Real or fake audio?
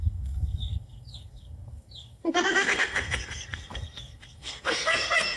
fake